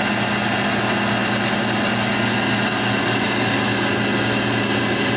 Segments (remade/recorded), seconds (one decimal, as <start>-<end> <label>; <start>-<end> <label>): 0.0-5.2 recorded